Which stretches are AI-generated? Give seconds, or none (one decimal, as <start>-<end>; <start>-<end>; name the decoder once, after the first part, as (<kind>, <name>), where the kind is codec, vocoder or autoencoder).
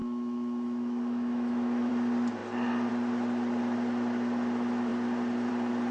0.0-1.9 (autoencoder, DAC-VAE)